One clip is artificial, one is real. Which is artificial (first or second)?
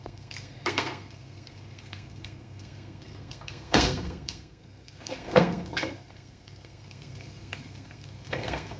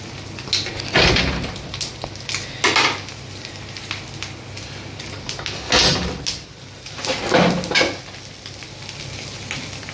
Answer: first